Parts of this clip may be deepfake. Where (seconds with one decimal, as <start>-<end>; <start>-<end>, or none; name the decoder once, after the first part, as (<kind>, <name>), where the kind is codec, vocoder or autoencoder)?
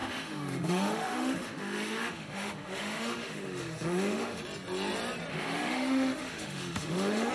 0.0-4.4 (autoencoder, DAC-VAE); 5.3-7.3